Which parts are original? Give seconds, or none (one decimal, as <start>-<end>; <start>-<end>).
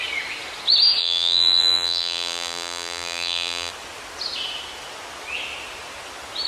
0.0-1.0; 3.7-6.5